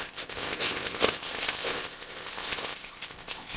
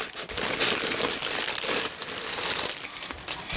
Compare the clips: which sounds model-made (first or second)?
first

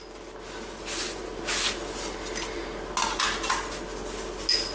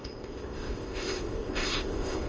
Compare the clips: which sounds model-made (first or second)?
second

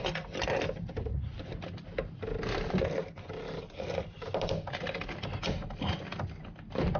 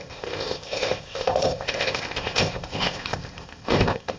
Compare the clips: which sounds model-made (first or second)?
second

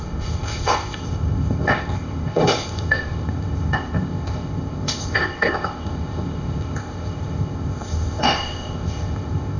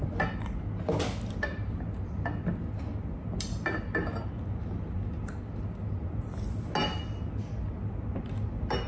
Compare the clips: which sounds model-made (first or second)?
first